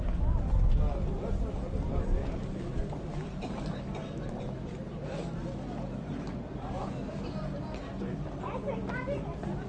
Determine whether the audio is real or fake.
real